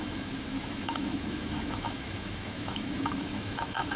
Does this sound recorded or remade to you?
remade